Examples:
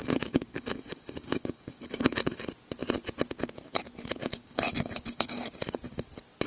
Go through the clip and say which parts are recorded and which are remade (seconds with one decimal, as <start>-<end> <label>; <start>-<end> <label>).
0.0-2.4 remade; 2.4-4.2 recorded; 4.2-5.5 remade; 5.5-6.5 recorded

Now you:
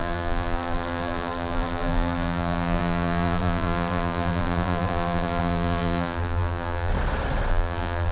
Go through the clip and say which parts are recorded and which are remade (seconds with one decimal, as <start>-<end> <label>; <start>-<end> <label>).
0.0-6.9 remade; 6.9-7.5 recorded; 7.5-8.1 remade

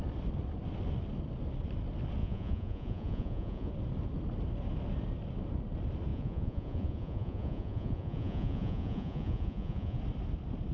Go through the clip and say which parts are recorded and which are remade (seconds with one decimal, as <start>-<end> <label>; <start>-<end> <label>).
0.0-2.2 recorded; 2.2-3.7 remade; 3.7-6.1 recorded; 6.1-10.0 remade; 10.0-10.7 recorded

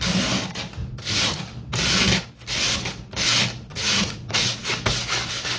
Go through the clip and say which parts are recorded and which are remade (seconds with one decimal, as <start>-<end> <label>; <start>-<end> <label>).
0.0-0.8 recorded; 0.8-1.4 remade; 1.4-3.7 recorded; 3.7-4.6 remade; 4.6-5.6 recorded

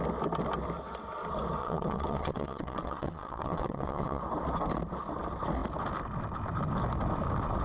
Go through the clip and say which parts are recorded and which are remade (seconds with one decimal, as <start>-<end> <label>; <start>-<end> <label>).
0.0-1.6 recorded; 1.6-4.2 remade; 4.2-7.6 recorded